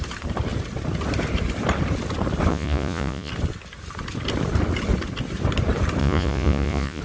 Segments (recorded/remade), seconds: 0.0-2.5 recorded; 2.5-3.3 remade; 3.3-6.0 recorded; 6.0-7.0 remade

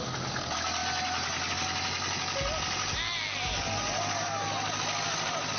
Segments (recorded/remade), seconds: 0.0-5.6 recorded

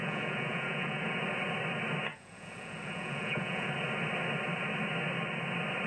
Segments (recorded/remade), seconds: 0.0-1.2 remade; 1.2-2.1 recorded; 2.1-3.7 remade; 3.7-5.9 recorded

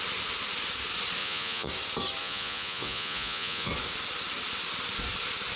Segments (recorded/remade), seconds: 0.0-1.2 recorded; 1.2-1.7 remade; 1.7-2.2 recorded; 2.2-3.7 remade; 3.7-5.6 recorded

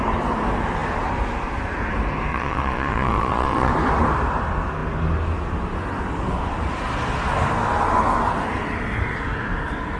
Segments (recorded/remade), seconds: 0.0-2.3 recorded; 2.3-3.7 remade; 3.7-10.0 recorded

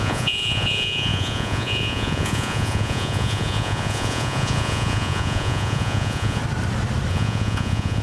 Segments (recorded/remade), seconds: 0.0-6.4 remade; 6.4-7.1 recorded; 7.1-8.0 remade

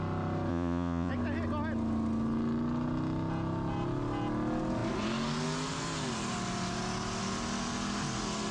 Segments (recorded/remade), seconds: 0.0-0.5 recorded; 0.5-1.1 remade; 1.1-8.5 recorded

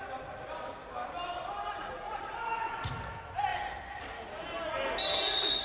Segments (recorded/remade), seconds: 0.0-1.7 recorded; 1.7-2.9 remade; 2.9-5.6 recorded